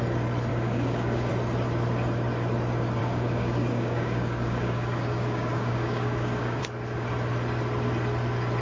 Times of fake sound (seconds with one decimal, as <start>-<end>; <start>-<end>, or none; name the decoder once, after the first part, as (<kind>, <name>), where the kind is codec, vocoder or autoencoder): 0.5-1.3 (codec, DAC); 3.0-6.6